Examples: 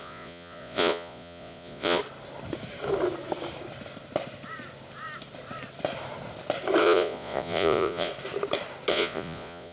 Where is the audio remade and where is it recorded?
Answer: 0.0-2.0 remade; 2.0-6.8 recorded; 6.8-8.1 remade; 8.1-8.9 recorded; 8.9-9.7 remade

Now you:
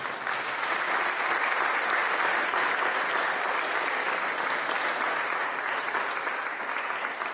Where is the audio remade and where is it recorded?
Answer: 0.0-7.3 recorded